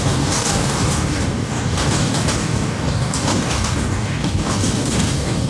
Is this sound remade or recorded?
remade